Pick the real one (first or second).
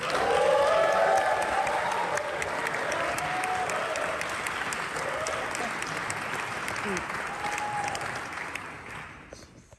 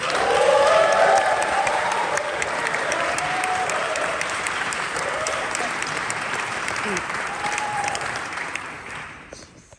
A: first